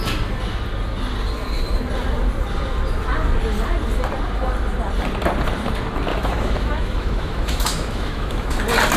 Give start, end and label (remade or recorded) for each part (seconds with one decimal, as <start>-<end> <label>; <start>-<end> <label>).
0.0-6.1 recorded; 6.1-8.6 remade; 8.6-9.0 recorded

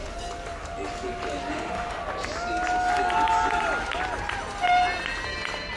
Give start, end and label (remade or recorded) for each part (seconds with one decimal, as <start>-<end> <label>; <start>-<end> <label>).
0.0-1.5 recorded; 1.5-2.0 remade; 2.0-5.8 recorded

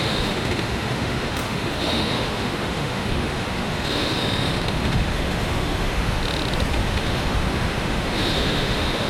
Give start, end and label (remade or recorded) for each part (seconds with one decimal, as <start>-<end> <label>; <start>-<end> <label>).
0.0-6.2 remade; 6.2-6.7 recorded; 6.7-9.1 remade